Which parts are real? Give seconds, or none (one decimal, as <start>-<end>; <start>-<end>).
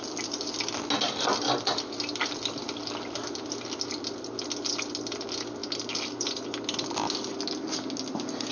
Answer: 0.0-8.5